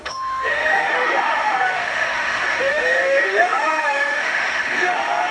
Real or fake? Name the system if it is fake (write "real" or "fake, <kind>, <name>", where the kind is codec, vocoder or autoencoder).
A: fake, autoencoder, DAC-VAE